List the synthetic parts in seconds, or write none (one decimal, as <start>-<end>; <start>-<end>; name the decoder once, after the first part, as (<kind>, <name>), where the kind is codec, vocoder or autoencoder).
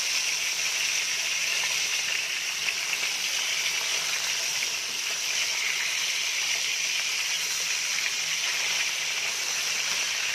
1.5-2.1 (vocoder, BigVGAN v2); 3.9-6.7; 7.9-9.6